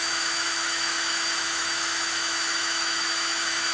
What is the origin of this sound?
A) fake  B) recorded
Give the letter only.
A